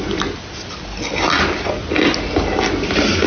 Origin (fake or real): real